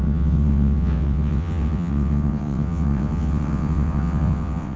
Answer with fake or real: fake